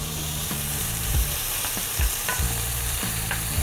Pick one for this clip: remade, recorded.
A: remade